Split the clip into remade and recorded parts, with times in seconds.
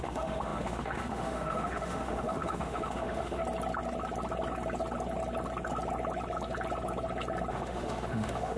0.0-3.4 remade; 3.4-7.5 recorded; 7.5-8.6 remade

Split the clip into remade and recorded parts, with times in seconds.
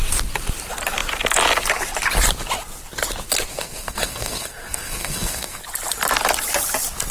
0.0-3.5 recorded; 3.5-5.6 remade; 5.6-7.1 recorded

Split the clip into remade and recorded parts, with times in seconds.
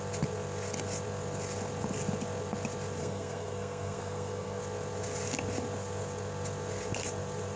0.0-3.0 recorded; 3.0-4.6 remade; 4.6-7.6 recorded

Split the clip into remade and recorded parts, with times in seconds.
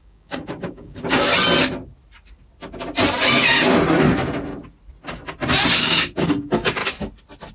0.0-1.3 remade; 1.3-5.8 recorded; 5.8-6.8 remade; 6.8-7.5 recorded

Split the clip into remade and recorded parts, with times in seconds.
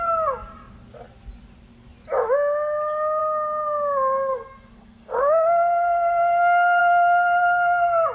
0.0-4.3 recorded; 4.3-6.8 remade; 6.8-8.1 recorded